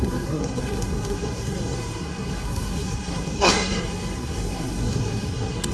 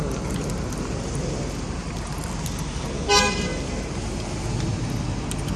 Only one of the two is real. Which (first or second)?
second